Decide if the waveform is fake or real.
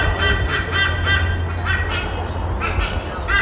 real